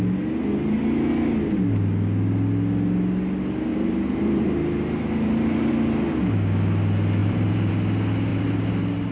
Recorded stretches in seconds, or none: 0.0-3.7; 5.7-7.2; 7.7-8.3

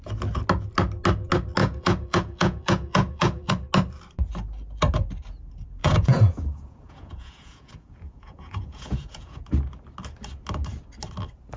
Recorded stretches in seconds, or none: 0.0-1.6; 3.5-5.8; 9.4-11.6

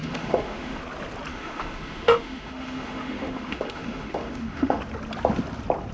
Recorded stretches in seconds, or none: 0.8-1.3; 4.8-5.9

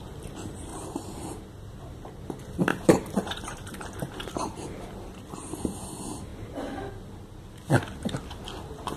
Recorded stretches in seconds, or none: 0.0-0.7; 1.4-2.7; 5.2-9.0